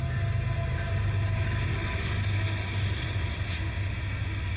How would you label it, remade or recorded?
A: recorded